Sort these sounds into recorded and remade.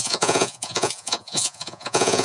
remade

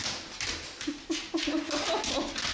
recorded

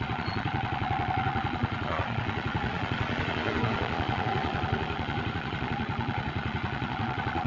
remade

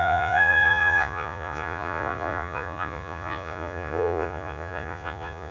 remade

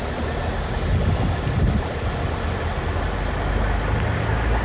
recorded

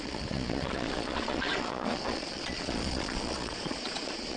remade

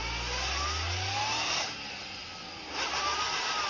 recorded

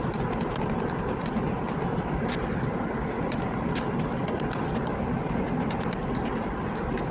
recorded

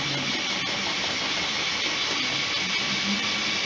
recorded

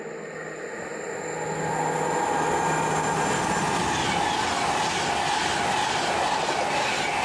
recorded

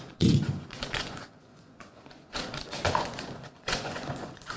remade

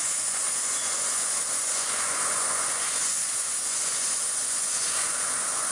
remade